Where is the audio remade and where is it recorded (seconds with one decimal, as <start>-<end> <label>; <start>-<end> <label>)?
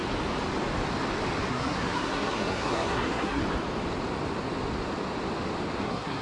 0.0-1.5 recorded; 1.5-3.4 remade; 3.4-5.8 recorded; 5.8-6.2 remade